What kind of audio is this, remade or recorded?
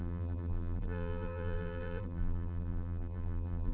remade